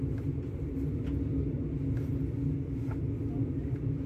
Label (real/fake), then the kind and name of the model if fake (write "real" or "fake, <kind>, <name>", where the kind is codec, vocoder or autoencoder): real